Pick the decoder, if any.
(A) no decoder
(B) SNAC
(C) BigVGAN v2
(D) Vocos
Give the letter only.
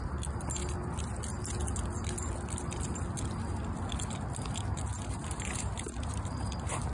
A